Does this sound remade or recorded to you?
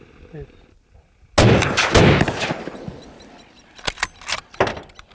recorded